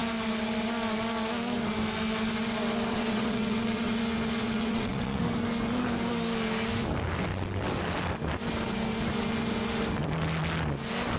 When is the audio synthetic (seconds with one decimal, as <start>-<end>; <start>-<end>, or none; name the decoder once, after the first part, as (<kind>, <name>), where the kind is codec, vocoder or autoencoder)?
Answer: 2.9-4.0 (vocoder, WaveNeXt); 4.4-5.2